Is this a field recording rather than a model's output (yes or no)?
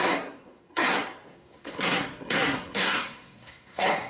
no